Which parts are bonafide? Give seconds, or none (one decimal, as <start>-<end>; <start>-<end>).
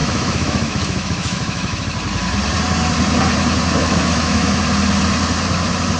1.8-3.8; 4.6-6.0